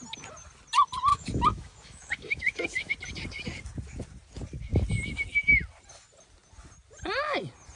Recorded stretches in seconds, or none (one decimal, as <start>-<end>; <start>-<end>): 0.0-1.1; 2.9-7.8